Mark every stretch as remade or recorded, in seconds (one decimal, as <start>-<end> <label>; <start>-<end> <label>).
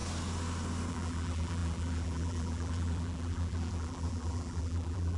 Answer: 0.0-0.9 recorded; 0.9-5.2 remade